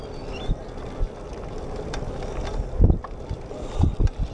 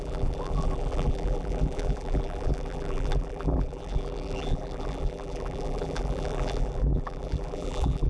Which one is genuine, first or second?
first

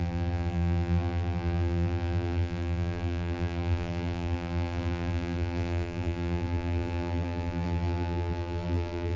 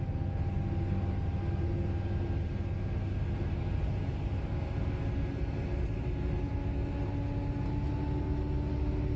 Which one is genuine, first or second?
second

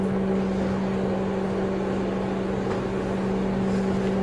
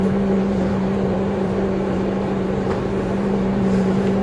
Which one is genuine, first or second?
first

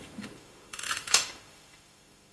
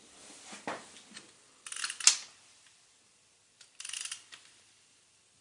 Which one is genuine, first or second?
second